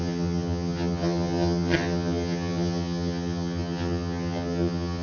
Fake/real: fake